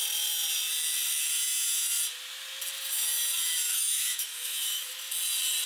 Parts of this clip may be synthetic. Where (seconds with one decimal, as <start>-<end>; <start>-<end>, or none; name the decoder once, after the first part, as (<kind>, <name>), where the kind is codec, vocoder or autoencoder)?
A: 3.7-4.9 (autoencoder, DAC-VAE)

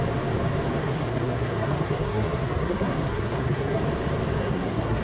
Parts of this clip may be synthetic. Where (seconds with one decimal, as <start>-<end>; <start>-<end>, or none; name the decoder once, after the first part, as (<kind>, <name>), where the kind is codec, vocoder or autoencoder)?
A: 0.8-3.8 (codec, SNAC); 4.4-5.0

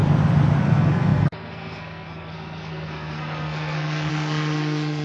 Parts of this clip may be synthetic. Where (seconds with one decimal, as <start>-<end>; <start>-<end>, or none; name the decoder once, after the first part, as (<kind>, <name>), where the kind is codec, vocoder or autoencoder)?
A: 0.6-5.0 (codec, SNAC)

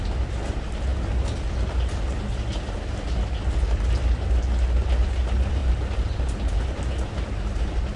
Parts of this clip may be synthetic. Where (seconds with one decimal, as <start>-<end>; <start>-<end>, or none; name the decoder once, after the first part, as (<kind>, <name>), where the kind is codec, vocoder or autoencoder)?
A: none

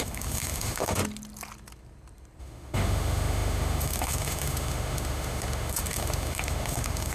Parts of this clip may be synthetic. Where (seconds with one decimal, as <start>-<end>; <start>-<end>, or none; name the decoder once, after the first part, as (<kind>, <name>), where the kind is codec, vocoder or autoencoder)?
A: 0.0-1.0 (autoencoder, DAC-VAE); 2.4-7.1

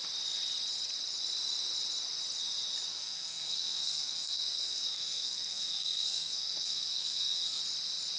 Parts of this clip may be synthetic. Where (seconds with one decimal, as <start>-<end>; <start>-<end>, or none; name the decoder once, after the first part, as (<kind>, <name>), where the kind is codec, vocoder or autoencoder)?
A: 2.9-7.6 (codec, SNAC)

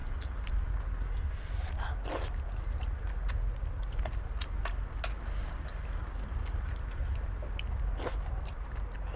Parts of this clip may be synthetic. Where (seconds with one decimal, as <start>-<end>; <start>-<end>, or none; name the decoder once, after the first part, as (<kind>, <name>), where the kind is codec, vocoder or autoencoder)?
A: 0.0-0.5 (vocoder, BigVGAN v2)